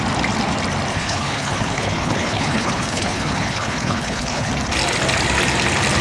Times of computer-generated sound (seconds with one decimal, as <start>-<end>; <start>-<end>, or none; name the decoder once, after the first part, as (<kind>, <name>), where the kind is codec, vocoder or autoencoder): 0.9-4.5 (codec, HILCodec)